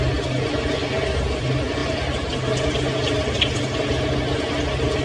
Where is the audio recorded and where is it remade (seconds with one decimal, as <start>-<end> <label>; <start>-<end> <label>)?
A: 0.0-5.0 recorded